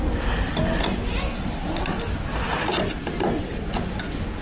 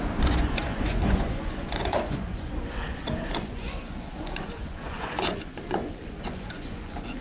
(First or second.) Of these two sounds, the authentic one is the first